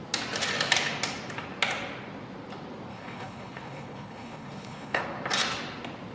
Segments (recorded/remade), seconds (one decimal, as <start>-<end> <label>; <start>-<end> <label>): 0.0-2.9 recorded; 2.9-5.0 remade; 5.0-6.1 recorded